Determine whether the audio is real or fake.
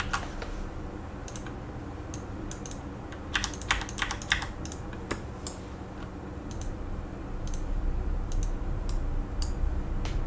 real